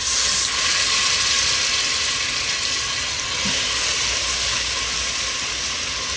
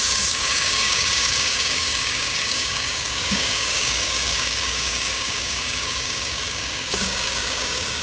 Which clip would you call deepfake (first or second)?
second